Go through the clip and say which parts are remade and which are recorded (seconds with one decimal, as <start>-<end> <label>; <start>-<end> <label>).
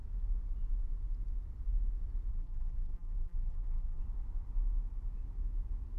0.0-2.3 recorded; 2.3-4.0 remade; 4.0-6.0 recorded